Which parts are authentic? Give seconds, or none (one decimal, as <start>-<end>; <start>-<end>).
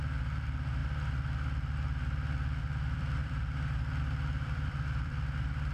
0.8-2.6